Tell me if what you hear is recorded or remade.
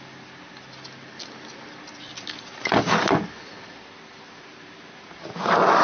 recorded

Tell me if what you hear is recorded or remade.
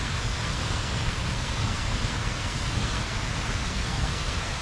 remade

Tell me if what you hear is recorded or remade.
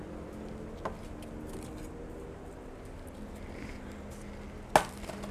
recorded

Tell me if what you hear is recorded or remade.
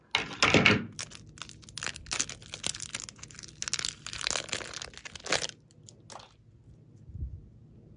recorded